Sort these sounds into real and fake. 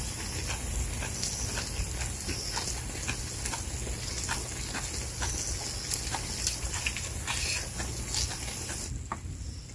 real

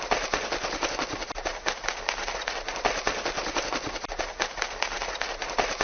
real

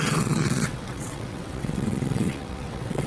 fake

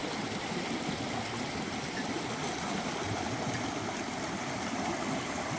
real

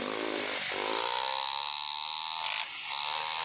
real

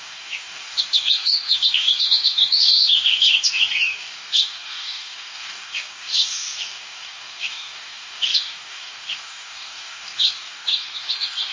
fake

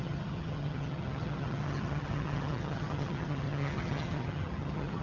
fake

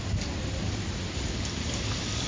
real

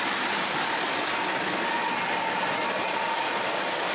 real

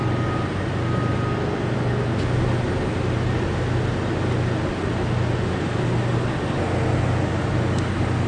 real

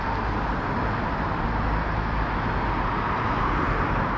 real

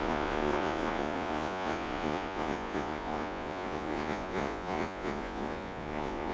fake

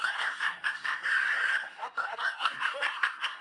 fake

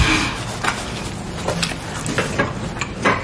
real